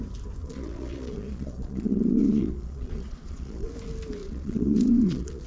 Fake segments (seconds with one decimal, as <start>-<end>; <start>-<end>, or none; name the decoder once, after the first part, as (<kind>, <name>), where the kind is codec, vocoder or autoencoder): 0.4-3.7 (vocoder, Vocos); 4.2-5.5